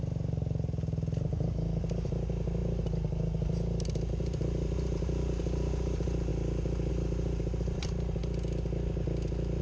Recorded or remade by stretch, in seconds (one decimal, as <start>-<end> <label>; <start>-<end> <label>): 0.0-6.3 remade; 6.3-6.9 recorded; 6.9-8.2 remade; 8.2-9.6 recorded

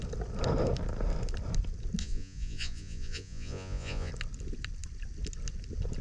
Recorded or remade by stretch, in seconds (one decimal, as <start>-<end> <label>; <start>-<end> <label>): 0.0-2.0 recorded; 2.0-4.1 remade; 4.1-6.0 recorded

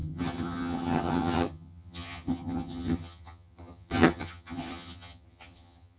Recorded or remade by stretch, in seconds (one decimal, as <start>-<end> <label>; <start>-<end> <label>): 0.0-6.0 remade

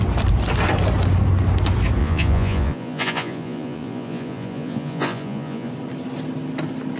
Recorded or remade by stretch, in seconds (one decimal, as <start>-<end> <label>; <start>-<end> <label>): 0.0-2.0 recorded; 2.0-5.7 remade; 5.7-7.0 recorded

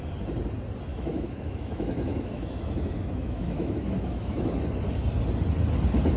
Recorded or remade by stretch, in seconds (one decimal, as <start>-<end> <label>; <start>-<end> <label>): 0.0-0.9 recorded; 0.9-4.6 remade; 4.6-6.2 recorded

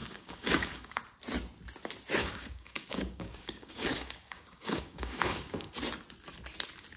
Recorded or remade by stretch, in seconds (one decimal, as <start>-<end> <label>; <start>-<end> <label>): 0.0-1.0 remade; 1.0-2.2 recorded; 2.2-5.7 remade; 5.7-7.0 recorded